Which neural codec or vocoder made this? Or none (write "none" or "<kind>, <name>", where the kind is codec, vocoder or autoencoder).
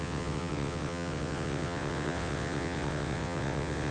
vocoder, WaveNeXt